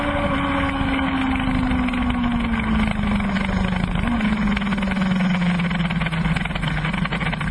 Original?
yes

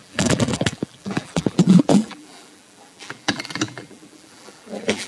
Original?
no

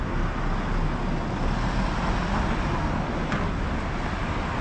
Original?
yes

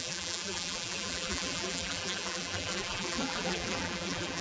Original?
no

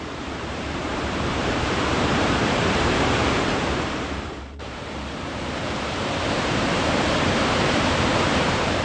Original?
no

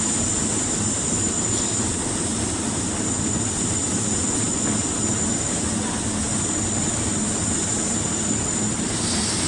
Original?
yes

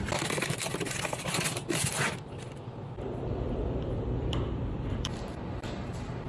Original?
no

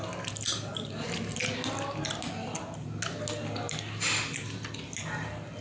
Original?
yes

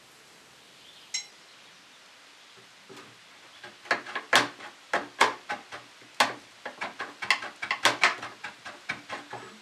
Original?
yes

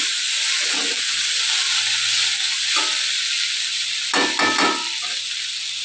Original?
yes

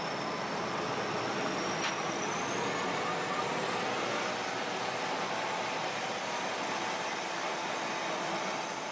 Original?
yes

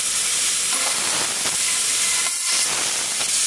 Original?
no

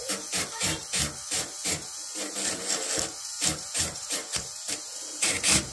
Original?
no